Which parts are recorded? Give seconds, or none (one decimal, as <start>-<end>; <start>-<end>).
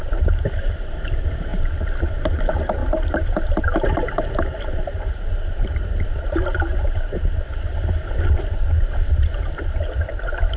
1.5-2.0; 2.8-3.6